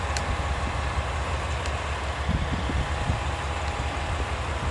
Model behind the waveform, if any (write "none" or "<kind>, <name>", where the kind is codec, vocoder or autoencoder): none